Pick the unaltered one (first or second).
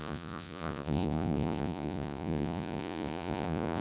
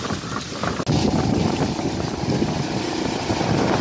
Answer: second